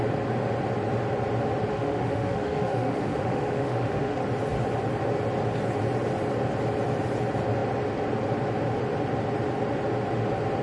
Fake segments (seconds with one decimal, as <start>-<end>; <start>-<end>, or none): 1.7-4.2